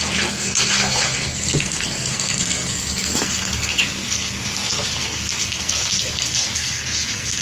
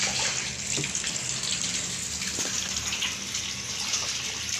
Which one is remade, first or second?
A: first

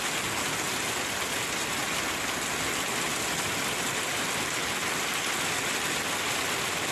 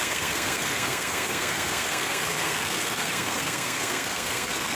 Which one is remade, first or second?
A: second